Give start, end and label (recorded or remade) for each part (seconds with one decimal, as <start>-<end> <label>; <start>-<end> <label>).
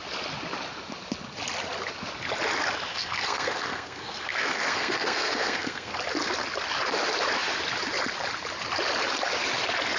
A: 0.0-2.9 recorded; 2.9-5.9 remade; 5.9-10.0 recorded